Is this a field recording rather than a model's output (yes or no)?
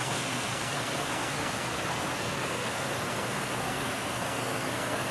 no